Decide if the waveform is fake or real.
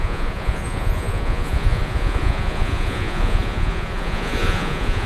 fake